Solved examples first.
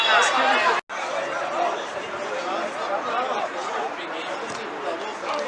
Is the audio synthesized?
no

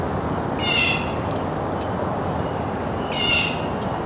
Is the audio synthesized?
no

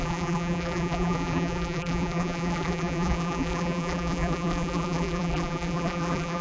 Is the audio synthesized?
yes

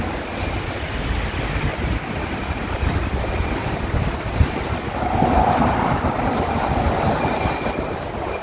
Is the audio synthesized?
yes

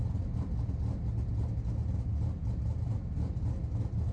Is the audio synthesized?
no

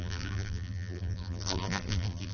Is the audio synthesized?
yes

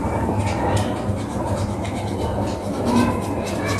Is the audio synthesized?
no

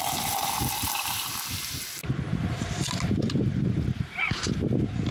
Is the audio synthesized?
no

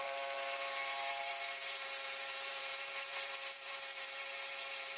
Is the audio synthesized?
yes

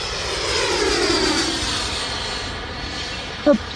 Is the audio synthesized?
no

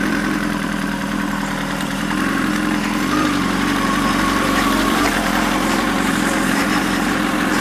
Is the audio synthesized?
yes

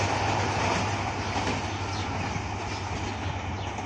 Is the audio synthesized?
no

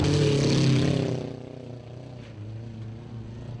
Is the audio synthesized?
no